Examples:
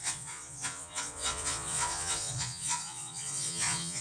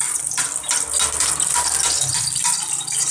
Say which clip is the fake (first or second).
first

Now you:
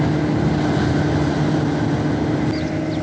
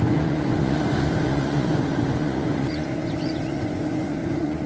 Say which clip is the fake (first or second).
second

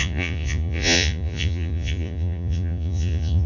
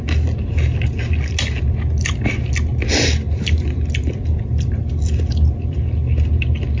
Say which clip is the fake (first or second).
first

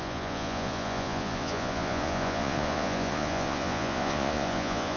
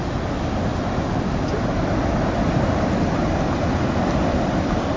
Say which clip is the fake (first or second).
first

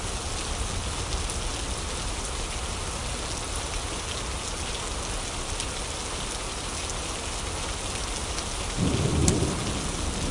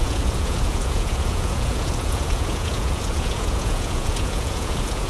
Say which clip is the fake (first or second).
second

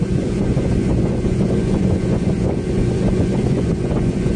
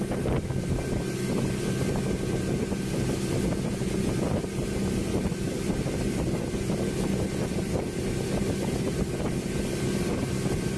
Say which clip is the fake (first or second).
first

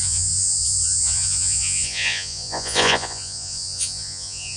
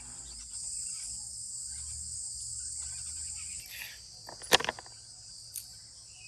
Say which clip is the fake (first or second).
first